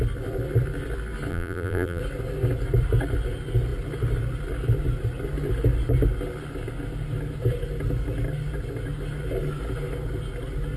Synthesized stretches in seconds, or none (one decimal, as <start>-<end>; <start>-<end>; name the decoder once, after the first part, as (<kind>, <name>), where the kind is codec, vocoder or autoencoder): 1.3-2.0 (vocoder, BigVGAN v2)